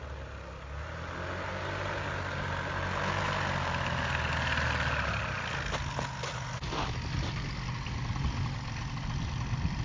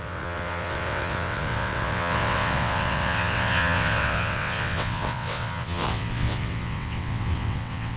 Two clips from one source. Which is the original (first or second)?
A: first